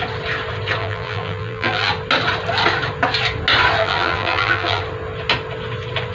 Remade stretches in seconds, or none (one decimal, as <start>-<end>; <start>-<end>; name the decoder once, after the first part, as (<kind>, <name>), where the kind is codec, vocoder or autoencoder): 0.8-1.9 (vocoder, BigVGAN v2); 3.8-4.8

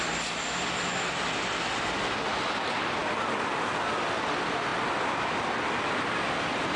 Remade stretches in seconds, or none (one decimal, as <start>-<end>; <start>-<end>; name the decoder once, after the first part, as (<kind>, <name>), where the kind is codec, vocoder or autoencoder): none

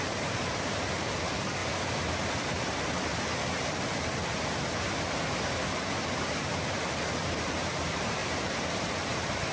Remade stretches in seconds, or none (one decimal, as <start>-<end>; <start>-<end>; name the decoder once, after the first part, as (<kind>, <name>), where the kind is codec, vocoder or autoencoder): 0.0-1.6 (vocoder, BigVGAN v2); 2.1-4.2; 6.7-9.5

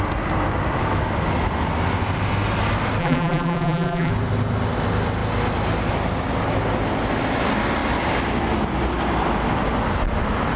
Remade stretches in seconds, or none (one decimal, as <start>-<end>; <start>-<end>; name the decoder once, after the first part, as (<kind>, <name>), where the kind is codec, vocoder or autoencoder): 3.0-4.1 (vocoder, BigVGAN v2)

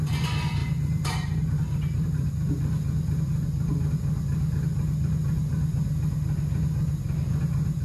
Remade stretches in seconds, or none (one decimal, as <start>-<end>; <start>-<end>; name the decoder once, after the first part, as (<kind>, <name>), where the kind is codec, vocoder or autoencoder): 0.6-2.3 (vocoder, BigVGAN v2)